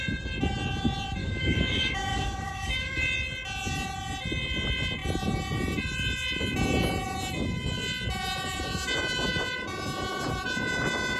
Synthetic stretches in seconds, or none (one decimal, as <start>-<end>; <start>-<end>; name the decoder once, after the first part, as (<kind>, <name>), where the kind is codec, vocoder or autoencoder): 1.2-3.0 (codec, DAC)